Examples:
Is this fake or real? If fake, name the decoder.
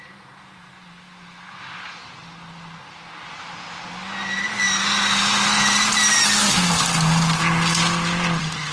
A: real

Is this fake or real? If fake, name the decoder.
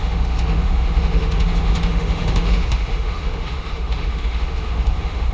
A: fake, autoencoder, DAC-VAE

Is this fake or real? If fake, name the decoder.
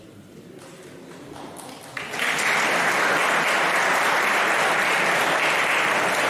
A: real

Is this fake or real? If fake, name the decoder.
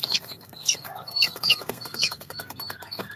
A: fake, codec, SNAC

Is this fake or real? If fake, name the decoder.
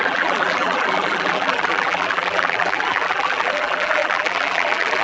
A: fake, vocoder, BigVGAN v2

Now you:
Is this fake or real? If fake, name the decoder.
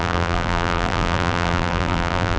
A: fake, vocoder, BigVGAN v2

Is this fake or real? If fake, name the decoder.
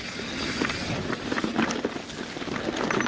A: real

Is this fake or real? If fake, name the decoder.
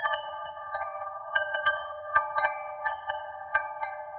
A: fake, vocoder, HiFi-GAN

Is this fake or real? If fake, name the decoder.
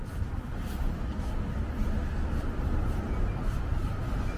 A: real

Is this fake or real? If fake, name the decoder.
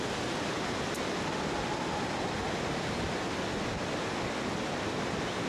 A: real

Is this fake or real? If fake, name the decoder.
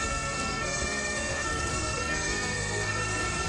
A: fake, codec, SNAC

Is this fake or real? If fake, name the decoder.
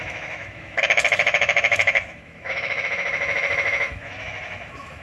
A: fake, autoencoder, DAC-VAE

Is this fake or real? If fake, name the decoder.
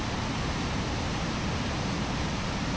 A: fake, vocoder, BigVGAN v2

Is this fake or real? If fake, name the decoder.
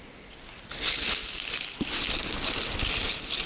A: real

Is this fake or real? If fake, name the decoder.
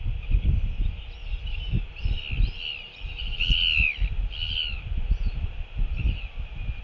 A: real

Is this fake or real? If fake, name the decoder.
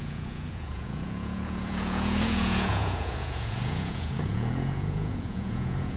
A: fake, vocoder, Vocos